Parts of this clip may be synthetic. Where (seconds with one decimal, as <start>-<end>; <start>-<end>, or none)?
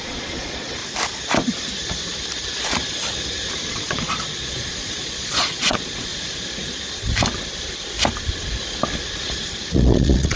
0.0-0.8; 3.7-6.1; 9.7-10.4